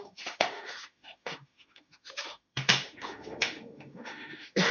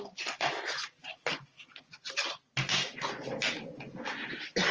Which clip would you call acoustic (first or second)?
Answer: second